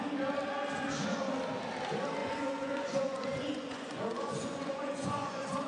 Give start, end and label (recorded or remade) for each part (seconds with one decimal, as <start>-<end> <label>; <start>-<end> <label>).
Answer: 0.0-2.2 recorded; 2.2-5.7 remade